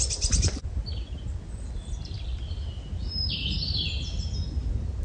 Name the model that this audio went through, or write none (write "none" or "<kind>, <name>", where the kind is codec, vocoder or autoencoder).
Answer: none